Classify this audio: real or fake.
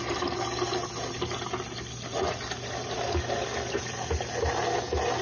real